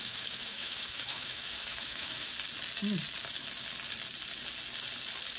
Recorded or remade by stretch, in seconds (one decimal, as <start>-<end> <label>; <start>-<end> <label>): 0.0-2.3 remade; 2.3-5.4 recorded